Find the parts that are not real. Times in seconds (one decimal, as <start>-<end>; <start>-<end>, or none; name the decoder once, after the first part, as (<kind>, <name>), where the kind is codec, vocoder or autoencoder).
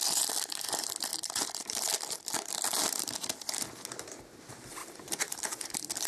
1.1-3.0 (vocoder, BigVGAN v2); 4.8-5.5